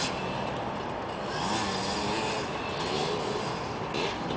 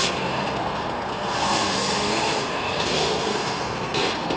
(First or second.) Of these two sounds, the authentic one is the first